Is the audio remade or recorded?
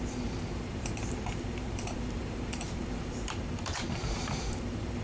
remade